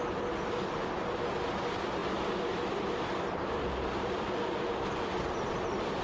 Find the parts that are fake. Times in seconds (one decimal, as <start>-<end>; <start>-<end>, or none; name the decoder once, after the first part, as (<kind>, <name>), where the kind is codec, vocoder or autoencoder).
none